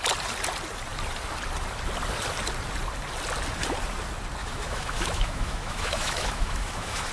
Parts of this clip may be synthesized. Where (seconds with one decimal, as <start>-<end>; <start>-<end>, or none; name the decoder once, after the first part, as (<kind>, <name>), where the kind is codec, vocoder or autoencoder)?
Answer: 4.4-7.1 (autoencoder, DAC-VAE)